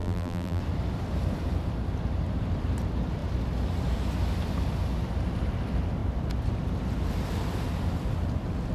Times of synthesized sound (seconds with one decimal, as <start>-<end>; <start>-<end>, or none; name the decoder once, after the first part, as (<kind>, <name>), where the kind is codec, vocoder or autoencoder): 0.0-0.6 (vocoder, BigVGAN v2)